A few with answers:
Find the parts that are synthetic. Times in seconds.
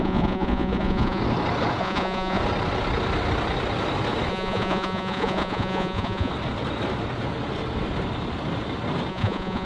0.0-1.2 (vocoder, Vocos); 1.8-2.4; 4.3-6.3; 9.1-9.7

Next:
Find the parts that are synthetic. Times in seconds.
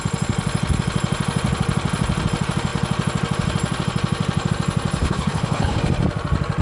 5.0-5.8 (codec, HILCodec)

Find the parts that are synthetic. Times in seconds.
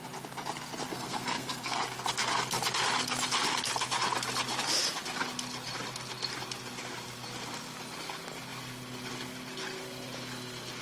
0.9-1.8 (codec, SNAC)